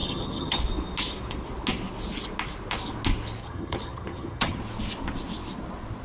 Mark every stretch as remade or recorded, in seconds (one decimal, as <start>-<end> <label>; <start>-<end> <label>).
0.0-0.6 remade; 0.6-3.4 recorded; 3.4-4.6 remade; 4.6-6.0 recorded